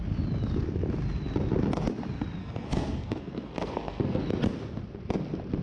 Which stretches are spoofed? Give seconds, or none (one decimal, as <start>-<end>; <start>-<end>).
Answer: 2.4-4.2